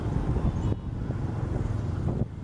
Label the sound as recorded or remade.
recorded